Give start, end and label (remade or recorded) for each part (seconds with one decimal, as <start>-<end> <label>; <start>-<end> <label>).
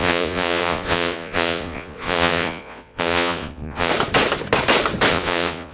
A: 0.0-3.9 remade; 3.9-5.1 recorded; 5.1-5.7 remade